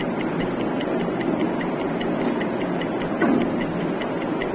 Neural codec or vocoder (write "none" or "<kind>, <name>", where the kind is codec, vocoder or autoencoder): none